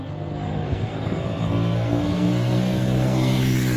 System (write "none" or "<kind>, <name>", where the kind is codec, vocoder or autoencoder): codec, SNAC